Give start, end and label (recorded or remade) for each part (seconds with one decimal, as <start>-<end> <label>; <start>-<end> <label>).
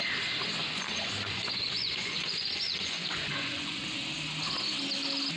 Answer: 0.0-0.6 recorded; 0.6-3.8 remade; 3.8-5.4 recorded